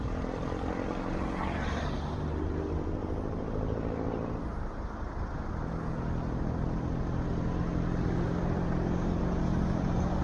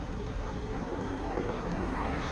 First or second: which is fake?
second